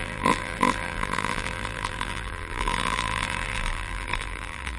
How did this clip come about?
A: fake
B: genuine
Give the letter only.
A